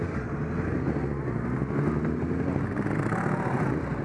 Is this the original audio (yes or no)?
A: yes